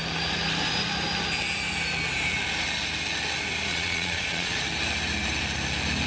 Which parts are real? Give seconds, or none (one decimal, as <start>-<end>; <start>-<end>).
0.0-3.7; 4.6-6.1